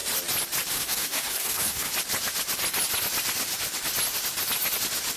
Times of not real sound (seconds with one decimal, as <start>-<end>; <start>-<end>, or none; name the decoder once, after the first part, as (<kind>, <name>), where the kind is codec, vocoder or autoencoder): 0.7-1.9 (codec, DAC)